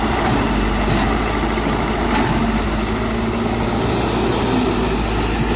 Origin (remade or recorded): recorded